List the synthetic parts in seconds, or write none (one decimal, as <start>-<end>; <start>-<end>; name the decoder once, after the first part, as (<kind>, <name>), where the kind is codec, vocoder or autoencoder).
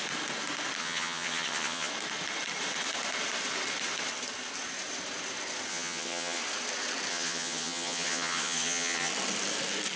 0.8-1.9 (vocoder, HiFi-GAN); 5.7-6.4; 7.1-9.1